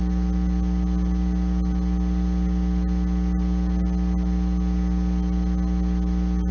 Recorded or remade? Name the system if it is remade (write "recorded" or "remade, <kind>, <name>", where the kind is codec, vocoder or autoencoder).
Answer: recorded